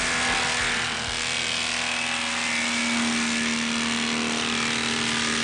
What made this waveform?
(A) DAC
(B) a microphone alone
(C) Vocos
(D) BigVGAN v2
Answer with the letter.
B